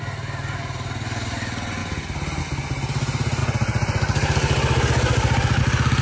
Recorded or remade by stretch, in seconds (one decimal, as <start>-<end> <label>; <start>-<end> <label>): 0.0-6.0 recorded